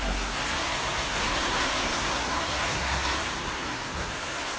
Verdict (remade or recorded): remade